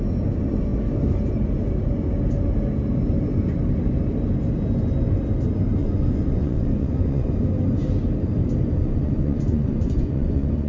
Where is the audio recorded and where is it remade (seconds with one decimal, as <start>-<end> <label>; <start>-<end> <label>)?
0.0-5.8 recorded; 5.8-7.3 remade; 7.3-8.8 recorded; 8.8-10.7 remade